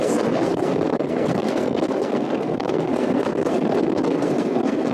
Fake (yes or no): yes